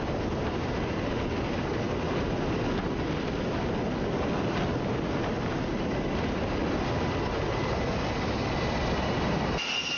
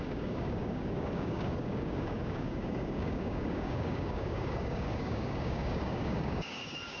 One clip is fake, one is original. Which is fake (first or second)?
second